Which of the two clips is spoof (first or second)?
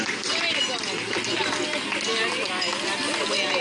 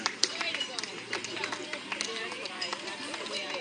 second